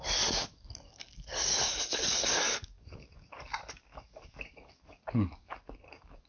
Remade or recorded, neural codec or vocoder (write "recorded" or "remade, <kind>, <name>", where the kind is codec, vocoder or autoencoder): remade, codec, DAC